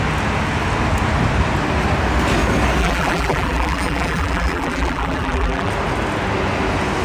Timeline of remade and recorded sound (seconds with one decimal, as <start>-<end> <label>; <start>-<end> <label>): 0.0-2.8 recorded; 2.8-5.7 remade; 5.7-7.0 recorded